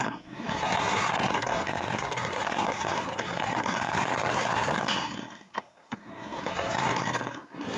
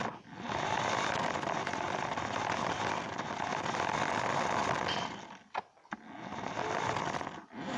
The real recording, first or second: second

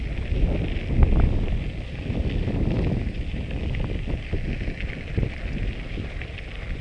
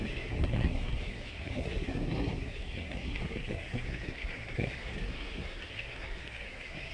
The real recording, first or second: first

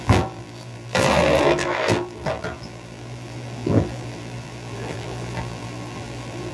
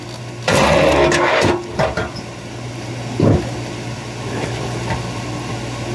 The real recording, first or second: second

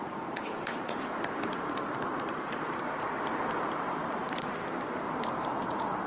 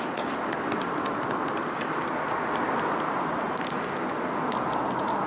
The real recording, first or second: second